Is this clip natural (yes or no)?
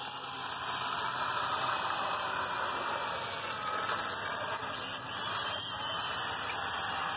yes